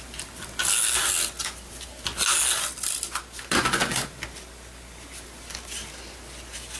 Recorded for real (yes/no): yes